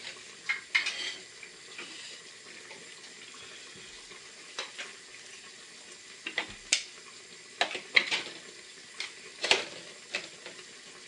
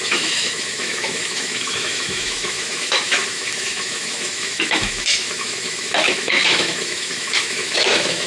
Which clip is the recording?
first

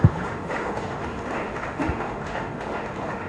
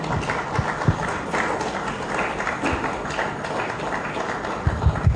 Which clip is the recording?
second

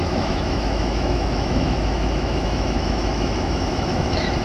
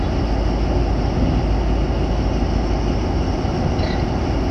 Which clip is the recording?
second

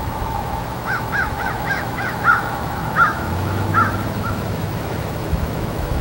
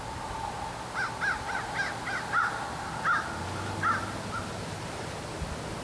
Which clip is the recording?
second